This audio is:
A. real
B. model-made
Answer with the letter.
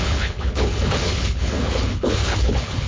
B